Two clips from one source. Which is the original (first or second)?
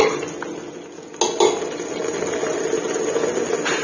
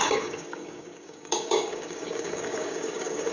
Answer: first